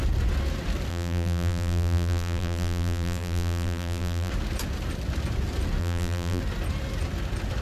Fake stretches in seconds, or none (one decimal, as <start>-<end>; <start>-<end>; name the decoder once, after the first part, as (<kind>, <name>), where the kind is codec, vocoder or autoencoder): 0.9-4.3 (vocoder, BigVGAN v2); 5.8-6.4